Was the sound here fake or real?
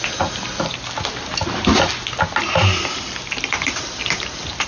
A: real